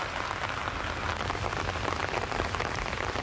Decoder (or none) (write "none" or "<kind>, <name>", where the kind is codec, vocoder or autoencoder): none